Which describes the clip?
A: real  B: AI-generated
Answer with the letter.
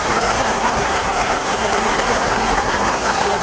B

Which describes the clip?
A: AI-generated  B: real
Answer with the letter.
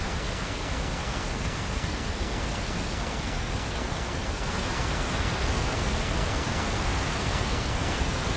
A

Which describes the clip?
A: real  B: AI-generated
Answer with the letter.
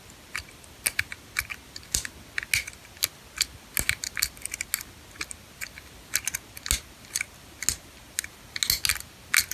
A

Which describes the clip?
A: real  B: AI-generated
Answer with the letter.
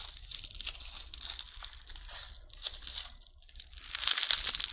A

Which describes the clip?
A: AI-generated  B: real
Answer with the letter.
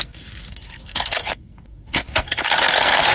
A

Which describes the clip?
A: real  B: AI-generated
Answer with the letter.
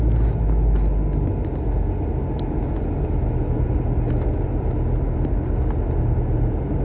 A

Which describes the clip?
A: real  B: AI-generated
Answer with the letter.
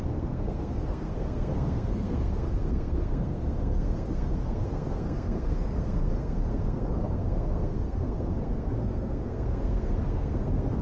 B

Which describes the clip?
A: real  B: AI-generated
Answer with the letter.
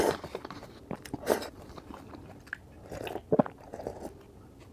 A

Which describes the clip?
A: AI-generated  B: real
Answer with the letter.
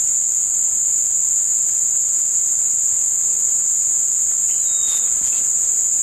B